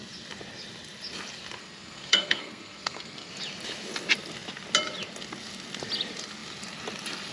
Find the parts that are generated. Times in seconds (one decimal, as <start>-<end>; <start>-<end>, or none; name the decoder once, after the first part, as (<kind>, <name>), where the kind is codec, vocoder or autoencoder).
1.6-3.3 (codec, SNAC)